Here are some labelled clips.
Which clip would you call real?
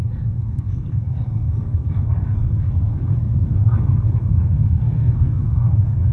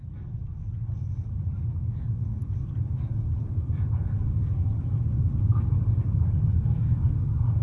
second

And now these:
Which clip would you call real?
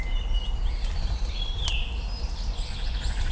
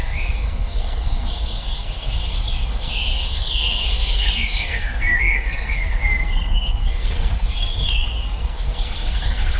first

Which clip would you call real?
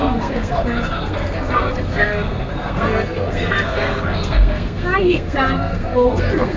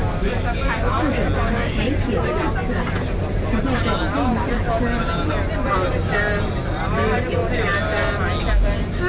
second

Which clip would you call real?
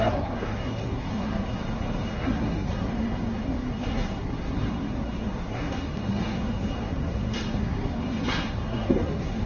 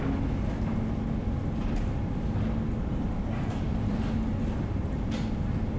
second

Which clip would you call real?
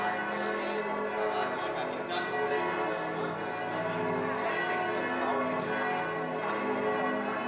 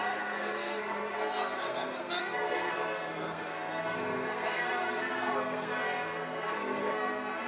first